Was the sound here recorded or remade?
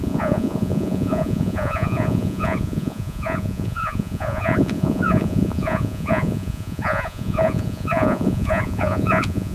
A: remade